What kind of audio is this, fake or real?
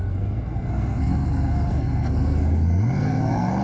fake